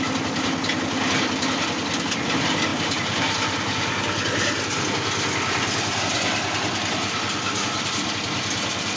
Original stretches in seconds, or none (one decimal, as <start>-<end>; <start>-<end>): 0.0-9.0